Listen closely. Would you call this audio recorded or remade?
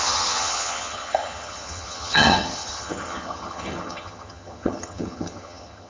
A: remade